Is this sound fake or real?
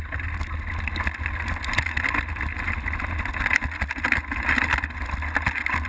real